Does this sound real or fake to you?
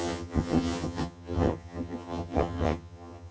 fake